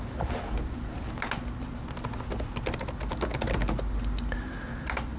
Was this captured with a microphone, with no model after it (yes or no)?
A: yes